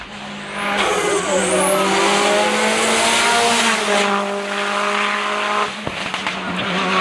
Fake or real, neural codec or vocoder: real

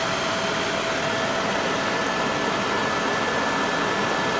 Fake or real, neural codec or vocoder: real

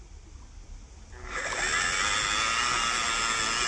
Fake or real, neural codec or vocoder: real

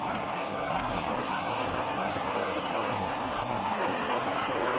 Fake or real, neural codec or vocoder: fake, codec, SNAC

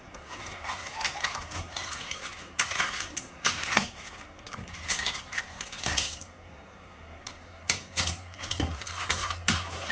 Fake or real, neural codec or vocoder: fake, codec, SNAC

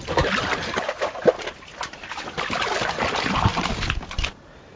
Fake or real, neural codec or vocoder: real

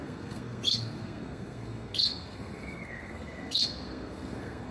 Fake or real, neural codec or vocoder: fake, codec, SNAC